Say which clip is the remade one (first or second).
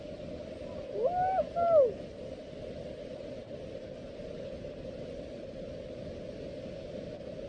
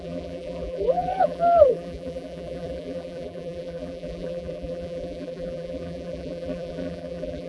second